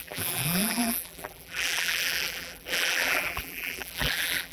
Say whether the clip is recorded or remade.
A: remade